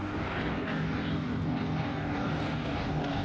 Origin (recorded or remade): remade